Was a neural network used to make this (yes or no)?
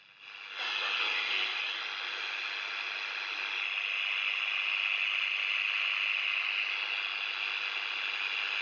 no